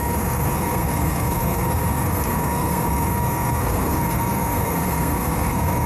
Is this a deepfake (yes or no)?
yes